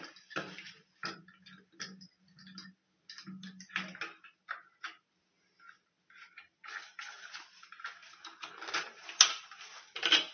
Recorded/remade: recorded